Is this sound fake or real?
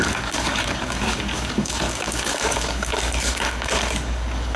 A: fake